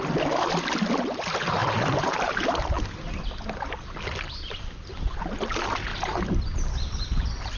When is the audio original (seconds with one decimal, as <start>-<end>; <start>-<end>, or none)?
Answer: 0.0-1.6; 2.5-5.9